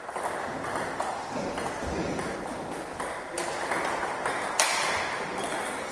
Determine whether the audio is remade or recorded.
recorded